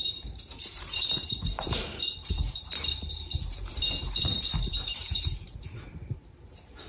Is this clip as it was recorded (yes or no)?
no